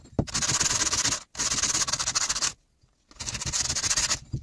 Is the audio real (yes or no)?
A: yes